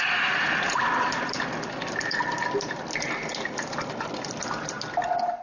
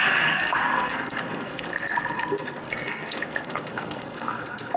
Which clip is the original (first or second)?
first